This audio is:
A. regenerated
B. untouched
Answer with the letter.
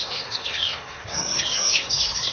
A